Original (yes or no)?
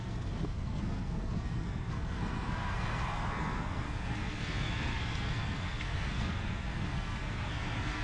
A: no